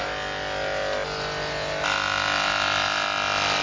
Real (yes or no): yes